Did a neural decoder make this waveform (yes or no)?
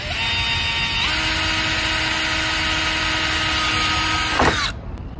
no